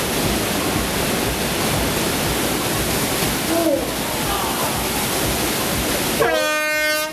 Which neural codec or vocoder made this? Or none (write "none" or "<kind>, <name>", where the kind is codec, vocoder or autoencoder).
none